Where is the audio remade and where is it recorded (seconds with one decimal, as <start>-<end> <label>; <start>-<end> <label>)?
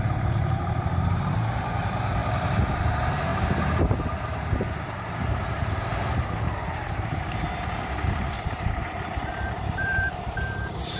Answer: 0.0-2.2 remade; 2.2-2.8 recorded; 2.8-3.3 remade; 3.3-4.4 recorded; 4.4-11.0 remade